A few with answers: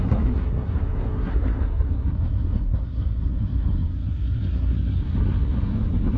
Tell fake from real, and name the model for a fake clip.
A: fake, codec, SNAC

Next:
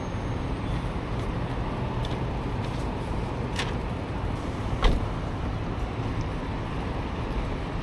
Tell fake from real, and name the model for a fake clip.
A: real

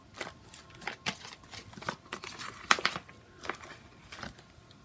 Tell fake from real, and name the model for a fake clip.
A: real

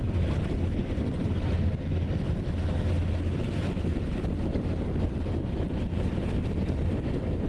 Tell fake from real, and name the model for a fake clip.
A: real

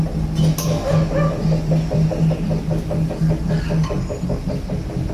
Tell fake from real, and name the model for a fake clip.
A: real